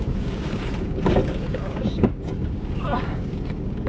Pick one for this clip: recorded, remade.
remade